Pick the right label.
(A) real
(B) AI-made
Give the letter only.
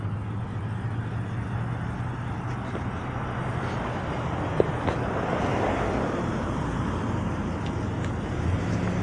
A